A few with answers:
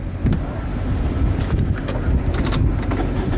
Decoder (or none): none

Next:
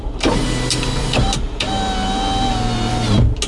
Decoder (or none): none